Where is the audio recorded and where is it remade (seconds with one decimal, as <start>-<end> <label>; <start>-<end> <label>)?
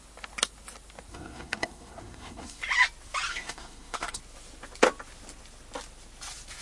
0.0-1.1 recorded; 1.1-2.6 remade; 2.6-3.3 recorded; 3.3-4.2 remade; 4.2-6.6 recorded